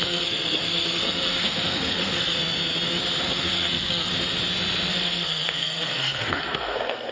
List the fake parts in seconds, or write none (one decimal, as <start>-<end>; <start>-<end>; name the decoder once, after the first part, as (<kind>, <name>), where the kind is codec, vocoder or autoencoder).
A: 0.0-2.4 (codec, SNAC); 3.3-4.1; 4.9-7.1